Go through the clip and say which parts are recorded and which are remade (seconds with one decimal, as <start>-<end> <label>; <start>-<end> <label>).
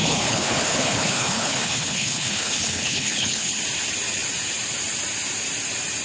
0.0-3.6 remade; 3.6-6.0 recorded